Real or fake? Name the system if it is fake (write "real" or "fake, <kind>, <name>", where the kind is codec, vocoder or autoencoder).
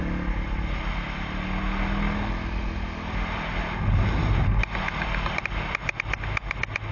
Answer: real